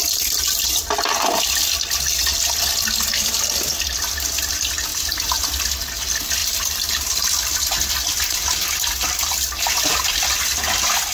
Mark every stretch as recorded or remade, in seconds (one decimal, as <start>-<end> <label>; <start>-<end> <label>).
0.0-4.9 recorded; 4.9-5.5 remade; 5.5-6.4 recorded; 6.4-6.9 remade; 6.9-11.1 recorded